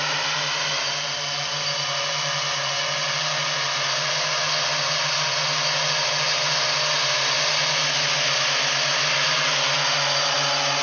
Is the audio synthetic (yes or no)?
no